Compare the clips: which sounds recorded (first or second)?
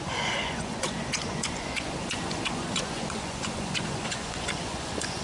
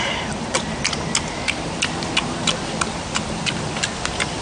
second